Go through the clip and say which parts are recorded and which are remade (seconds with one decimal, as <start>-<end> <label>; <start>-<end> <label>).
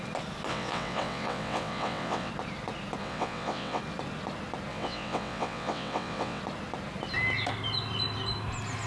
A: 0.0-0.5 recorded; 0.5-2.3 remade; 2.3-3.0 recorded; 3.0-3.8 remade; 3.8-4.7 recorded; 4.7-6.4 remade; 6.4-8.9 recorded